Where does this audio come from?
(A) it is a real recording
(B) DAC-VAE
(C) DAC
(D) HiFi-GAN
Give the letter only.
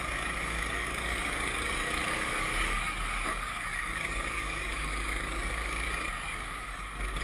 C